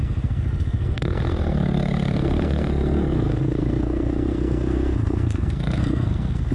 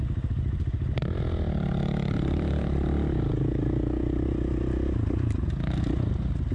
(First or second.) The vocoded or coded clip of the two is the first